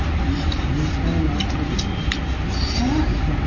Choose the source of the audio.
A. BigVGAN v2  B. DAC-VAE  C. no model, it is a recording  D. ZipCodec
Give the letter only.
C